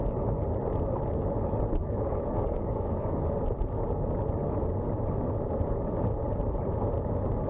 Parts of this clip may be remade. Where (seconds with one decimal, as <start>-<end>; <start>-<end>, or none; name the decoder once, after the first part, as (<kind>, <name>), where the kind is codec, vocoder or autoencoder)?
1.8-3.2 (codec, DAC)